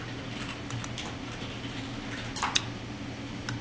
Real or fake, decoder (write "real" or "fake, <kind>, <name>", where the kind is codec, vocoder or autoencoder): real